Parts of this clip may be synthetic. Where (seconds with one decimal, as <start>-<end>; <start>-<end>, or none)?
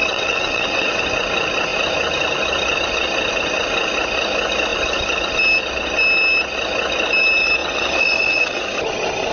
0.0-1.0; 7.6-8.6